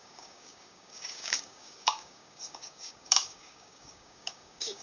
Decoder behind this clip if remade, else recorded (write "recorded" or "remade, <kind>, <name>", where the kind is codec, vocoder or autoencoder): remade, codec, DAC